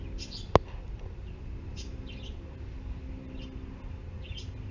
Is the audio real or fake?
real